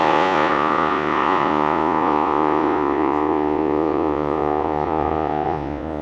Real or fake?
fake